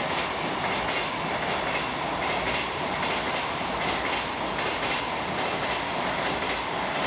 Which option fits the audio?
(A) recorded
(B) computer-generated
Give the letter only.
A